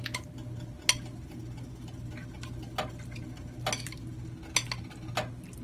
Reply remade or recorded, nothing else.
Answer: recorded